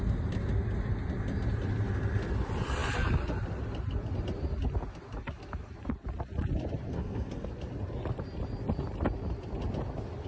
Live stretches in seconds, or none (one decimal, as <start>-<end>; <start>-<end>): 0.0-6.9; 7.5-10.3